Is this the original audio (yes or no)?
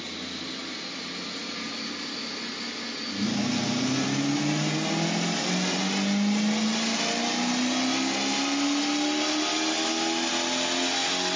yes